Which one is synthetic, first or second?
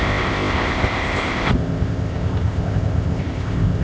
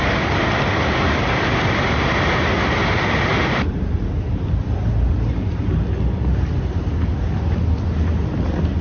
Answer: first